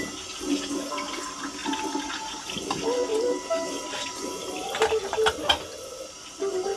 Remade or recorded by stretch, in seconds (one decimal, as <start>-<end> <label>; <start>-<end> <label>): 0.0-6.8 recorded

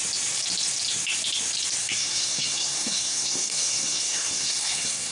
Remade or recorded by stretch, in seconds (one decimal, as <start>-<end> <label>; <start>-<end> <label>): 0.0-1.8 recorded; 1.8-5.1 remade

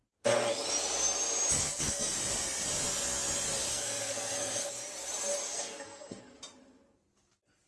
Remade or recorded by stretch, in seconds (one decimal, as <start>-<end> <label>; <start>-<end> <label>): 0.0-1.6 recorded; 1.6-2.2 remade; 2.2-3.7 recorded; 3.7-4.7 remade; 4.7-5.4 recorded; 5.4-6.2 remade; 6.2-7.7 recorded

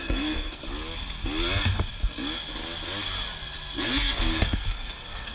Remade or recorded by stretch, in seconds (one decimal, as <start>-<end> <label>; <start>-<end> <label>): 0.0-0.6 remade; 0.6-3.8 recorded; 3.8-5.3 remade